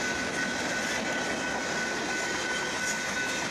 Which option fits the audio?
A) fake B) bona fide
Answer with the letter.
B